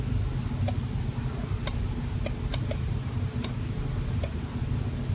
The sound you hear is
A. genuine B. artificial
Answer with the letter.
A